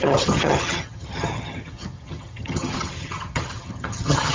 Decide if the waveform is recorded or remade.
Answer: remade